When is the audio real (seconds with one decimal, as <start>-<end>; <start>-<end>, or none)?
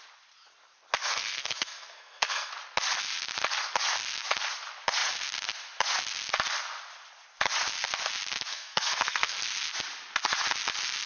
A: 0.0-1.0; 2.5-8.5; 9.4-11.1